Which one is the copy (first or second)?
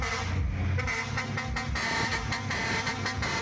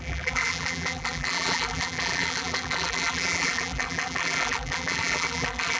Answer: second